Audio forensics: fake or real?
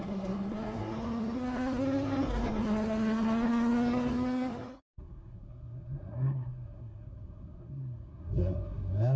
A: fake